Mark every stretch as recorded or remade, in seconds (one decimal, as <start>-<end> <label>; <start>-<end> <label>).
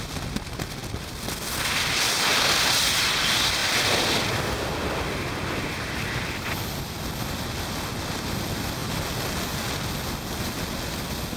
0.0-11.4 recorded